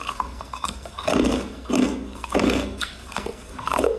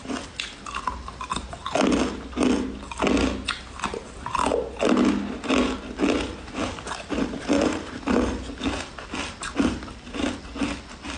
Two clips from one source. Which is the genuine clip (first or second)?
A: second